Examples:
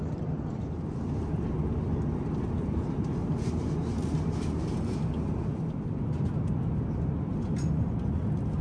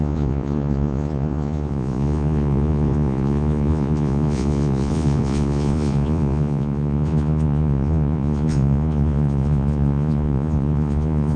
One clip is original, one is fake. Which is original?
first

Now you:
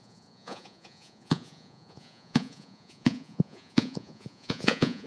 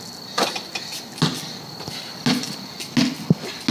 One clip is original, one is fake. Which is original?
second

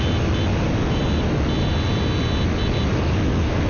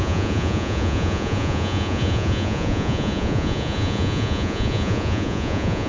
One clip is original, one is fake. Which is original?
first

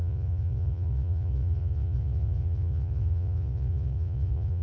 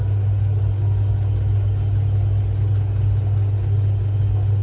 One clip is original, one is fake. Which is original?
second